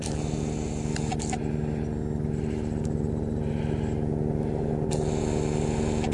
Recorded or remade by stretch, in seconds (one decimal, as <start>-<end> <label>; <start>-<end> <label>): 0.0-6.1 recorded